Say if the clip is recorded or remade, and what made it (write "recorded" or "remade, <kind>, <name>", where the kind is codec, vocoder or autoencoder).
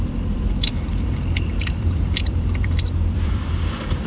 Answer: remade, vocoder, BigVGAN v2